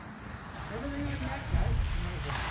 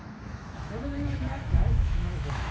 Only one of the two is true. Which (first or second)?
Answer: first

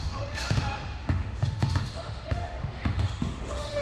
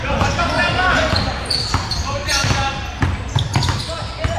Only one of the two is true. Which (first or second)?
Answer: second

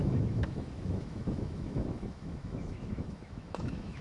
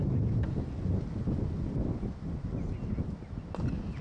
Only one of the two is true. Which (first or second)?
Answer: second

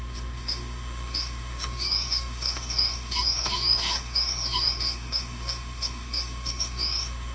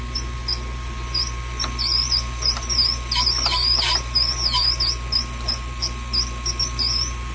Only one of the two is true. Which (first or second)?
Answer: second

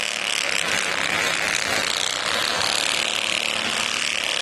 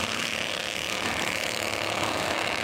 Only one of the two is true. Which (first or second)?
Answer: first